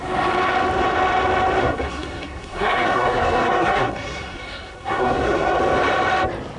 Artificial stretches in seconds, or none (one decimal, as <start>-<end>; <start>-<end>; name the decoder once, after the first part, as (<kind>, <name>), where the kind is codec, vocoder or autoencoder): 1.6-5.6 (codec, SNAC)